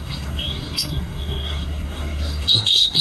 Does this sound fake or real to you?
fake